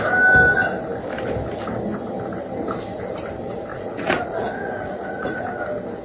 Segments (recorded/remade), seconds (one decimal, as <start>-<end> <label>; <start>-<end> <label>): 0.0-3.7 recorded; 3.7-5.5 remade; 5.5-6.0 recorded